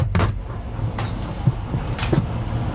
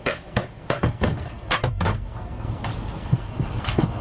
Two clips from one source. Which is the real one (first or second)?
first